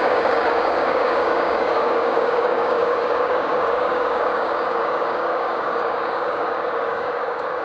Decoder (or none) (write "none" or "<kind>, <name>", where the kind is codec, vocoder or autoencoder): codec, DAC